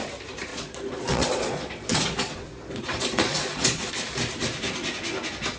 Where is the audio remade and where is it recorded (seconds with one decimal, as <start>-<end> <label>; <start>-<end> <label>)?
0.0-0.5 recorded; 0.5-3.9 remade; 3.9-5.6 recorded

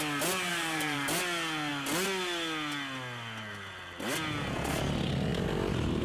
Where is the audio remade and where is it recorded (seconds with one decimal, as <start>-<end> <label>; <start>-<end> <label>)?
0.0-0.5 recorded; 0.5-1.1 remade; 1.1-6.0 recorded